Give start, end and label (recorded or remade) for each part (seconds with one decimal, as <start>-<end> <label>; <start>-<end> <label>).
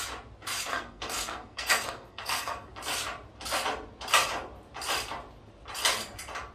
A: 0.0-0.7 recorded; 0.7-2.7 remade; 2.7-6.5 recorded